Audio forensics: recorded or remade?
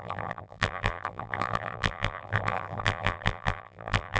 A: remade